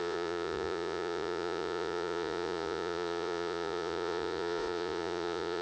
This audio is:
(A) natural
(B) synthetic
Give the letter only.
B